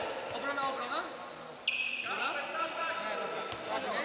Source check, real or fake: real